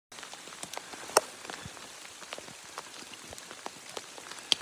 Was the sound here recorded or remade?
recorded